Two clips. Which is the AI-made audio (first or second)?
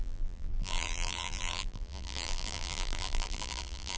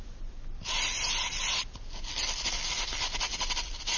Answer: first